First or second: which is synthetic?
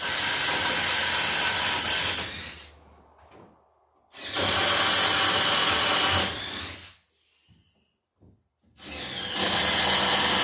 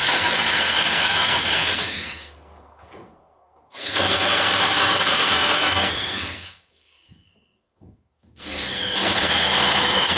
second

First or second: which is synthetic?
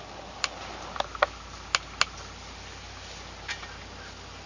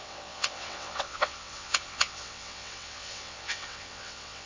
second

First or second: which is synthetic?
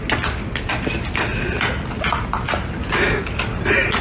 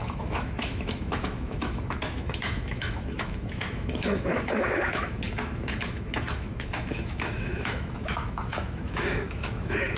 second